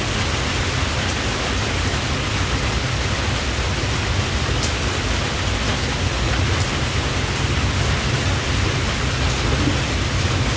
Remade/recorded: recorded